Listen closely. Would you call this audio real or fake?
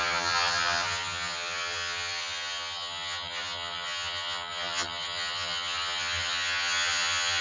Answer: fake